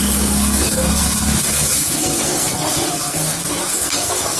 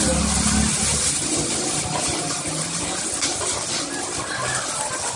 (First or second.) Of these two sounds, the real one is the second